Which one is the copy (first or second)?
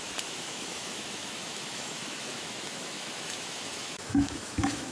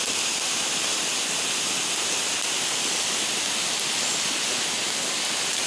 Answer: first